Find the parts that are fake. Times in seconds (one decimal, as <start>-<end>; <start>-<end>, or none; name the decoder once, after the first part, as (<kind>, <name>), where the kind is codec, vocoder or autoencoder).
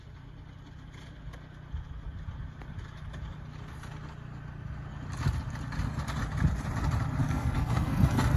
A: 7.2-8.4 (codec, SNAC)